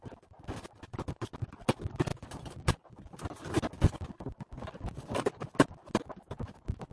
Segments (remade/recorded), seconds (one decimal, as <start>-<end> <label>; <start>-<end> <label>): 0.0-6.9 recorded